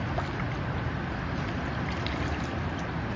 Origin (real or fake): real